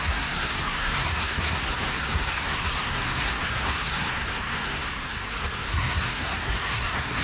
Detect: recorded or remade remade